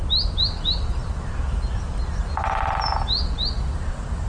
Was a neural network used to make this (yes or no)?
no